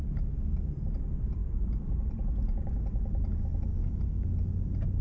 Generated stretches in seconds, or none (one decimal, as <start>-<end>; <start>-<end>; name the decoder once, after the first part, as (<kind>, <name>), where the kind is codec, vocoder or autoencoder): none